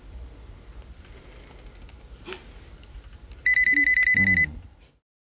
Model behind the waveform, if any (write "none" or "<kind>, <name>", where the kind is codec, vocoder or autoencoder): none